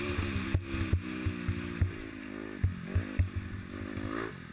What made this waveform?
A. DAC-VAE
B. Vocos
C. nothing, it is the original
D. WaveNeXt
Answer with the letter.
C